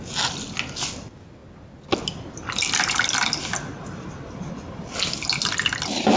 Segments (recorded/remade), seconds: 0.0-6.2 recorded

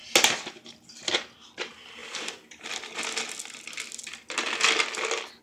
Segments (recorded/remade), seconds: 0.0-5.4 recorded

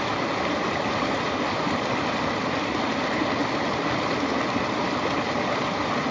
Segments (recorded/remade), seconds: 0.0-6.1 recorded

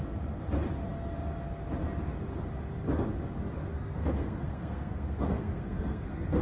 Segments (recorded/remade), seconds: 0.0-3.7 recorded; 3.7-6.4 remade